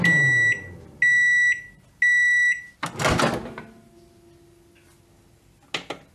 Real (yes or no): yes